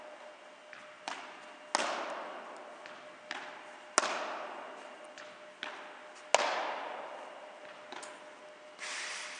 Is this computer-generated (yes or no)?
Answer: no